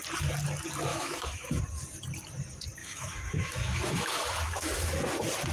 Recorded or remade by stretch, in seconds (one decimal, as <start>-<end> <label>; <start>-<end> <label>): 0.0-0.9 recorded; 0.9-1.6 remade; 1.6-2.8 recorded; 2.8-5.0 remade; 5.0-5.5 recorded